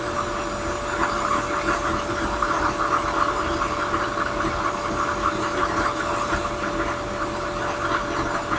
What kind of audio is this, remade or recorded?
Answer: recorded